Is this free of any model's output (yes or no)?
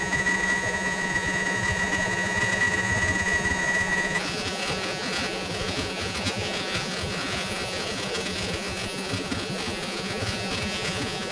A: no